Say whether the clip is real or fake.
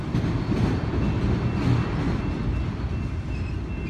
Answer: real